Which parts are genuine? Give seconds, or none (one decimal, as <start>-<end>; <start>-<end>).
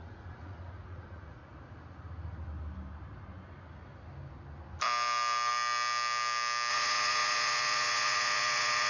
1.4-6.7